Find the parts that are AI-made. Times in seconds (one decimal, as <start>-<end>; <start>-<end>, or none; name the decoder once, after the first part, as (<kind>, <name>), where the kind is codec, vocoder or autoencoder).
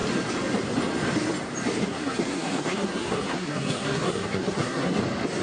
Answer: 1.8-5.0 (codec, SNAC)